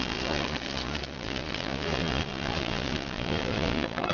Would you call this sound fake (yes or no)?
yes